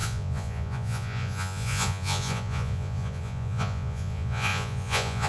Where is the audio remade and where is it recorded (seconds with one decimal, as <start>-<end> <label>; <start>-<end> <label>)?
0.0-5.3 remade